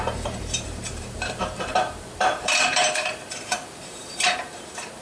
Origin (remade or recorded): remade